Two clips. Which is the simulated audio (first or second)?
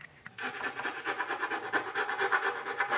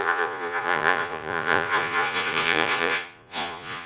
second